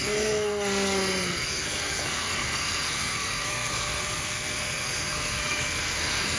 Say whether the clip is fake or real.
fake